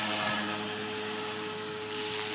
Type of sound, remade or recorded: recorded